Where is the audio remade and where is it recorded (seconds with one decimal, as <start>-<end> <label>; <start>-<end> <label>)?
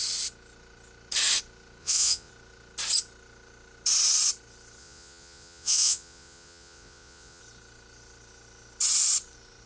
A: 0.0-1.8 recorded; 1.8-2.3 remade; 2.3-4.8 recorded; 4.8-7.4 remade; 7.4-9.7 recorded